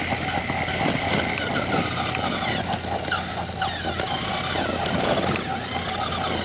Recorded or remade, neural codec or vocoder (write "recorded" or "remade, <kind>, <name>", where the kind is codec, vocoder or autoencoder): recorded